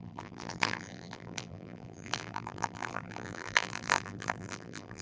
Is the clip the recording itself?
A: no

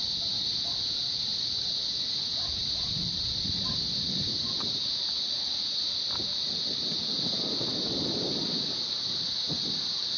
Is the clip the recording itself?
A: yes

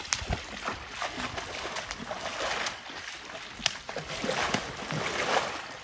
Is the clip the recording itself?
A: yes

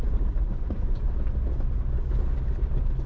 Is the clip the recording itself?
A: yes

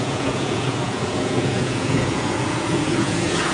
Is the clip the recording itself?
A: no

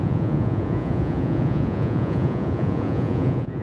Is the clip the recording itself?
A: no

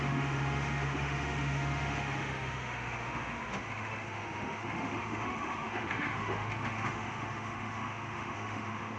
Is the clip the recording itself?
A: no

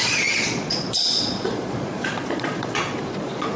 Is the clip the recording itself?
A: no